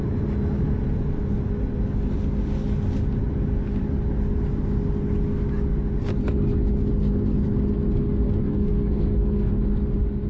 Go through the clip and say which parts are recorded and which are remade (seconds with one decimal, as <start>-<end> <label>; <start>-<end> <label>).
0.0-8.4 recorded; 8.4-9.5 remade; 9.5-10.3 recorded